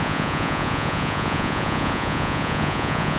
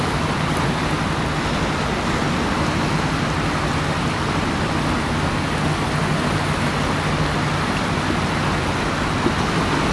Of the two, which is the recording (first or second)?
second